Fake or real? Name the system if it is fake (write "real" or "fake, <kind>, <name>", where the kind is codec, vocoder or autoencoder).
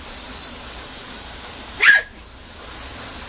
real